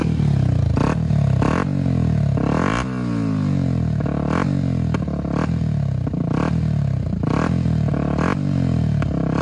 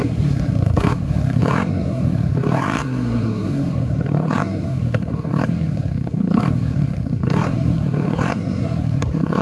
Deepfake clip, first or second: second